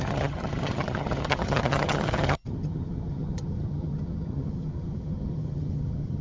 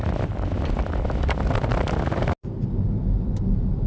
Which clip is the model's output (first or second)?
first